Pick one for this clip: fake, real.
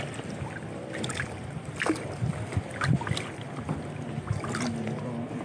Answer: real